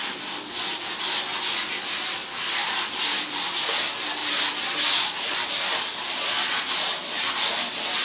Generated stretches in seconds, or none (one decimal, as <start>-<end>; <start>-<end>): none

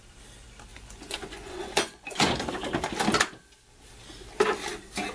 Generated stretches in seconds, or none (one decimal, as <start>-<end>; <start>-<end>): 0.7-2.3

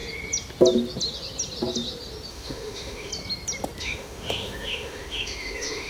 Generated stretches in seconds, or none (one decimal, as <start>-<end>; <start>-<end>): 2.3-3.1; 3.8-5.9

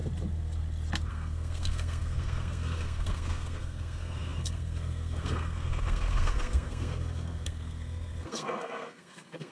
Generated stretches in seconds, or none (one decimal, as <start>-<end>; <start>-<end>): 1.1-9.5

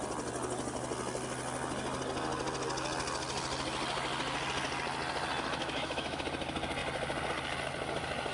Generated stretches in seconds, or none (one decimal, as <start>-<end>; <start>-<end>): 5.6-6.2

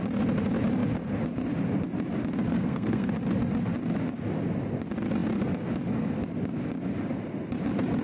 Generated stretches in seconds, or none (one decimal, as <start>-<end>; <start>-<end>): 2.5-3.1

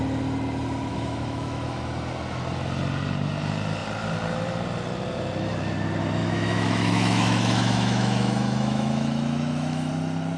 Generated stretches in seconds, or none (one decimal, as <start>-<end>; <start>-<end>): 0.9-1.8; 6.2-9.9